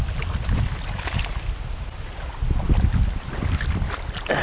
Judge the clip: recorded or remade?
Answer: recorded